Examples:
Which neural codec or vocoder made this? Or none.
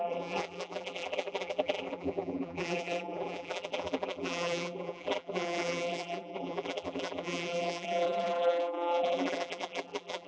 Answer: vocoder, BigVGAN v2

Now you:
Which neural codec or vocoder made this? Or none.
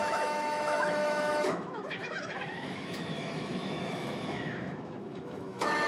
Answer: autoencoder, DAC-VAE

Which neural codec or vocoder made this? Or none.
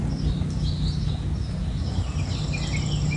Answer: none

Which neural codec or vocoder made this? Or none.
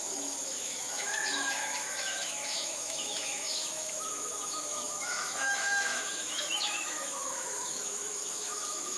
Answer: autoencoder, DAC-VAE